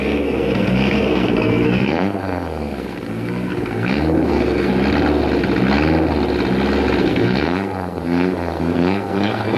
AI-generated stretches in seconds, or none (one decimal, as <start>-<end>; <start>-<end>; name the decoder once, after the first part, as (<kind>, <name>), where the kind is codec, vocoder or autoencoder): 0.0-4.7 (codec, SNAC); 7.0-9.6